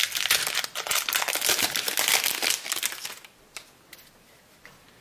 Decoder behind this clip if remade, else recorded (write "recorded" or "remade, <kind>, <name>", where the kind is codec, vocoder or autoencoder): recorded